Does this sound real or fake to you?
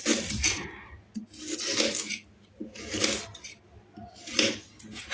real